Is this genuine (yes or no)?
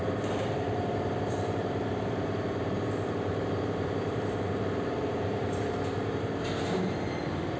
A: no